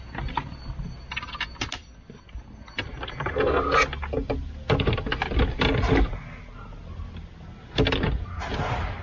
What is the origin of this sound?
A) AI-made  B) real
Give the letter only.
B